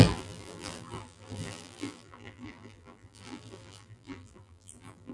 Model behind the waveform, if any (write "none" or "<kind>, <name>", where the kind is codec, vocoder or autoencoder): vocoder, BigVGAN v2